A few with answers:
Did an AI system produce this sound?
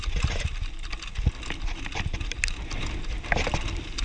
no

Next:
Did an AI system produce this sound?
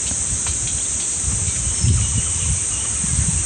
no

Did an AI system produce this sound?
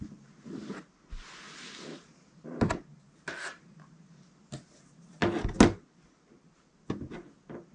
no